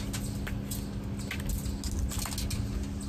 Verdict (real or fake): real